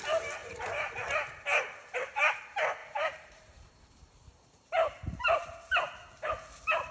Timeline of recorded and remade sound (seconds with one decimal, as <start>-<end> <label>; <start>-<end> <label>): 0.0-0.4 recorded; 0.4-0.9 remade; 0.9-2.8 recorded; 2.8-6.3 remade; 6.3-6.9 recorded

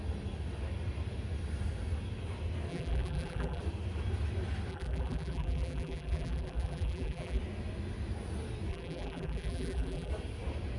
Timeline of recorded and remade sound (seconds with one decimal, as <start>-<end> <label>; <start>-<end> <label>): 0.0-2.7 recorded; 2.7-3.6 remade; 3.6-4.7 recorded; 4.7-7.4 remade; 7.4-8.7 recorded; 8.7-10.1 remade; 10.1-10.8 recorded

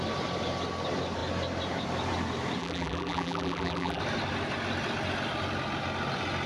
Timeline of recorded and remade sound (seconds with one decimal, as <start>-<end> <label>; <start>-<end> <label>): 0.0-2.6 recorded; 2.6-4.0 remade; 4.0-6.5 recorded

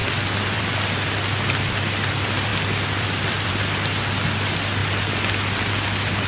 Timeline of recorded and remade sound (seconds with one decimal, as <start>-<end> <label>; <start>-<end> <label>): 0.0-0.6 remade; 0.6-2.5 recorded; 2.5-3.5 remade; 3.5-6.3 recorded

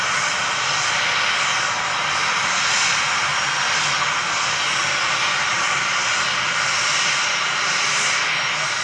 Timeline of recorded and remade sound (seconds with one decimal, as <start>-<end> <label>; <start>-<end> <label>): 0.0-8.8 recorded